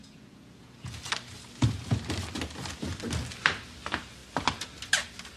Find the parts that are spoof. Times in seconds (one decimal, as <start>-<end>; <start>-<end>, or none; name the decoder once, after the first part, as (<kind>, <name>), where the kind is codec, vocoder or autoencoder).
0.0-0.9 (vocoder, Vocos)